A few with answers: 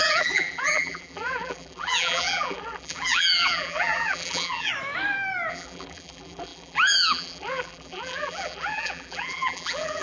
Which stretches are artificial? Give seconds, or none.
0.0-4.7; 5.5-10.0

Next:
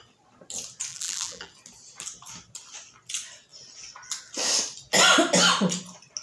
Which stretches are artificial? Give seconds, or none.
0.9-1.5

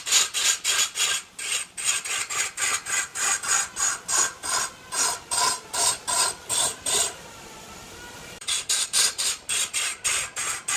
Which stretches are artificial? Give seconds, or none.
6.5-9.7

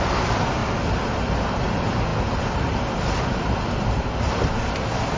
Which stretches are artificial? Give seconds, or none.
none

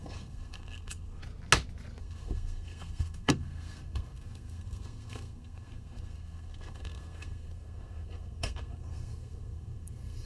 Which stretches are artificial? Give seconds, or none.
0.0-1.2; 2.0-10.3

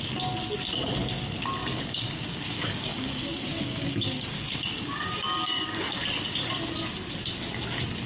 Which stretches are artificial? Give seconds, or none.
1.6-5.8

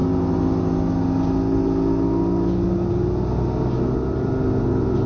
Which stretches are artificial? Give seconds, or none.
none